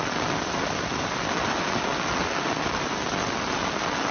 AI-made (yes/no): no